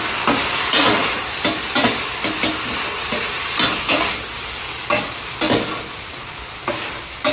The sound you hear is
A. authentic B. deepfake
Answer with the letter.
A